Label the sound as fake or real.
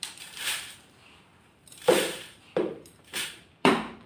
fake